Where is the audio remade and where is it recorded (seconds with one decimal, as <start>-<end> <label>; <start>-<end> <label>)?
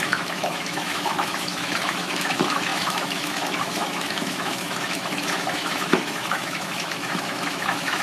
0.0-8.0 remade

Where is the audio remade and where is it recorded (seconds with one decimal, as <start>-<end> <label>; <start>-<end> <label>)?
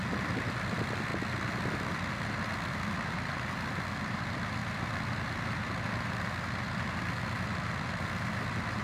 0.0-8.8 recorded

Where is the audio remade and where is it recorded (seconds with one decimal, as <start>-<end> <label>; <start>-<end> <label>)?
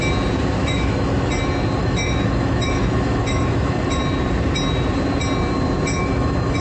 0.0-0.6 recorded; 0.6-1.3 remade; 1.3-1.8 recorded; 1.8-4.0 remade; 4.0-5.9 recorded; 5.9-6.6 remade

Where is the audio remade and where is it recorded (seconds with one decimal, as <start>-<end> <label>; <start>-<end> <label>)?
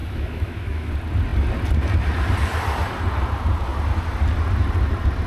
0.0-0.9 remade; 0.9-5.3 recorded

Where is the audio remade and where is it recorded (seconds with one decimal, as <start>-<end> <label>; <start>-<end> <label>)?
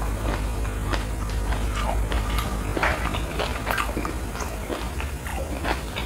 0.0-6.1 recorded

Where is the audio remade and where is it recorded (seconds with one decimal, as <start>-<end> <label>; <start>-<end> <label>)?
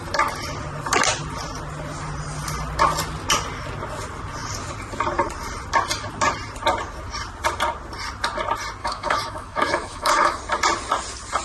0.0-8.8 recorded; 8.8-10.4 remade; 10.4-11.4 recorded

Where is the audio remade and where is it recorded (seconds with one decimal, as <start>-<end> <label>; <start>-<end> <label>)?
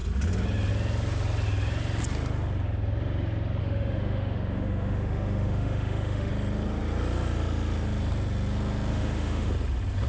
0.0-3.6 recorded; 3.6-6.3 remade; 6.3-8.9 recorded; 8.9-9.5 remade; 9.5-10.1 recorded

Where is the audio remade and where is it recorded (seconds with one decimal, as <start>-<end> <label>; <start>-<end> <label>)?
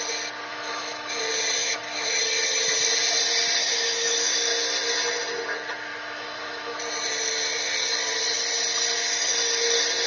0.0-0.5 recorded; 0.5-1.2 remade; 1.2-1.6 recorded; 1.6-2.2 remade; 2.2-3.6 recorded; 3.6-4.3 remade; 4.3-5.9 recorded; 5.9-6.8 remade; 6.8-10.1 recorded